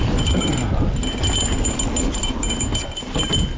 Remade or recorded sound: recorded